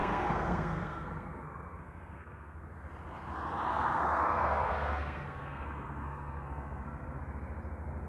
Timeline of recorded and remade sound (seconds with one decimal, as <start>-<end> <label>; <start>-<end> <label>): 0.0-2.7 remade; 2.7-3.7 recorded; 3.7-7.2 remade; 7.2-8.1 recorded

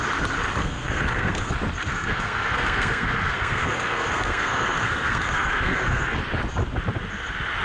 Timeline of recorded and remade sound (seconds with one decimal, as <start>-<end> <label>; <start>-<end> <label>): 0.0-0.6 recorded; 0.6-1.5 remade; 1.5-1.9 recorded; 1.9-6.2 remade; 6.2-7.6 recorded

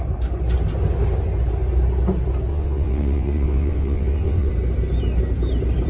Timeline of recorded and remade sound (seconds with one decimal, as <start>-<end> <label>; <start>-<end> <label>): 0.0-2.5 recorded; 2.5-4.5 remade; 4.5-5.9 recorded

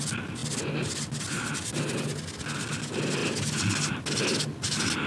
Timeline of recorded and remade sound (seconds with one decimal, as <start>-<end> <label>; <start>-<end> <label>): 0.0-5.1 recorded

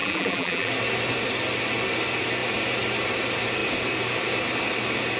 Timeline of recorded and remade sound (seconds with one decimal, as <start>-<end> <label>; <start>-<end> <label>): 0.0-0.7 remade; 0.7-5.2 recorded

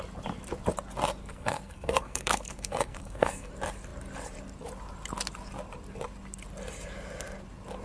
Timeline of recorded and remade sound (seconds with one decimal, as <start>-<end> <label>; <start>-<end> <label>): 0.0-1.2 recorded; 1.2-3.5 remade; 3.5-7.8 recorded

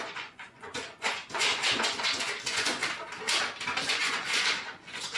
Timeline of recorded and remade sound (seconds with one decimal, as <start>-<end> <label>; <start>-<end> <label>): 0.0-2.8 remade; 2.8-3.8 recorded; 3.8-5.2 remade